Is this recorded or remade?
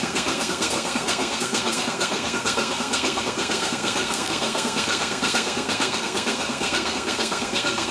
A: remade